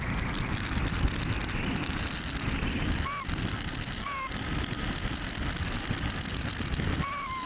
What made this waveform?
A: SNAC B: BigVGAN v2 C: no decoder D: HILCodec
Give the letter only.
C